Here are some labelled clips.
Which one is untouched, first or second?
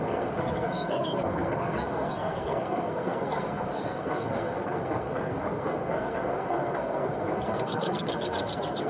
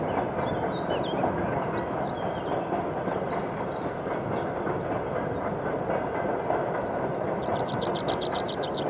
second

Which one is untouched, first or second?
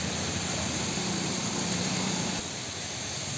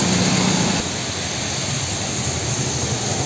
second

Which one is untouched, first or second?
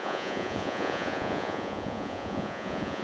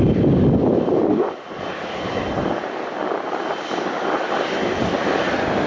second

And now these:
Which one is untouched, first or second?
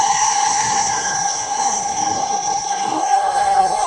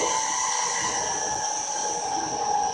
second